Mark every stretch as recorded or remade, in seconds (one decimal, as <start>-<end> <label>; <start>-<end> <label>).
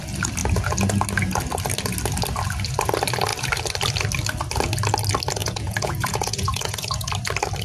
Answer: 0.0-5.4 recorded; 5.4-7.1 remade; 7.1-7.6 recorded